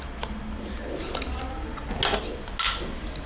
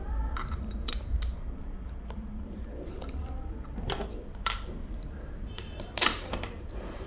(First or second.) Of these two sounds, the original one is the first